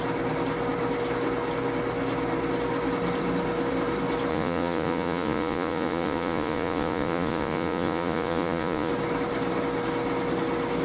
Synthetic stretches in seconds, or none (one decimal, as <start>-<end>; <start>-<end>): 4.3-8.9